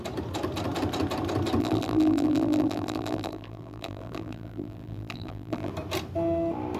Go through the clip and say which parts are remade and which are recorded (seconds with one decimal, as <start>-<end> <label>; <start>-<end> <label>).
0.0-1.6 recorded; 1.6-5.7 remade; 5.7-6.8 recorded